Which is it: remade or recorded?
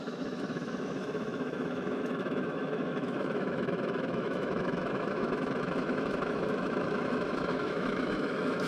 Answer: remade